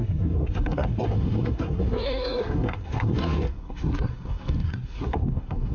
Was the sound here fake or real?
fake